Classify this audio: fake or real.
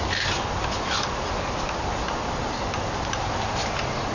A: real